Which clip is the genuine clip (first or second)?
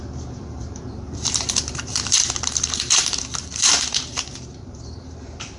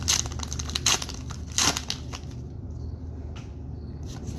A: second